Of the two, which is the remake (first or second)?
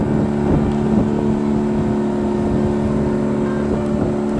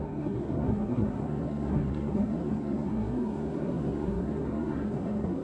second